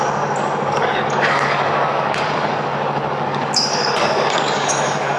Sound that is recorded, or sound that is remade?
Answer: remade